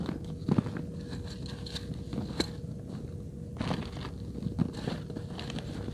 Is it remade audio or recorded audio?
recorded